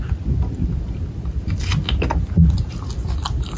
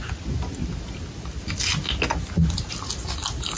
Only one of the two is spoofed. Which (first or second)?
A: first